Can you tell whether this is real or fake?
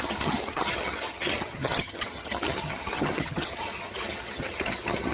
fake